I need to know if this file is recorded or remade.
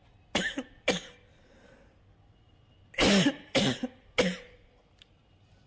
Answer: recorded